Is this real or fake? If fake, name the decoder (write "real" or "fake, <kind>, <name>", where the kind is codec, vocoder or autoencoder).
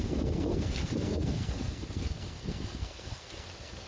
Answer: fake, codec, SNAC